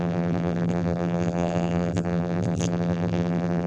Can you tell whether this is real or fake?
fake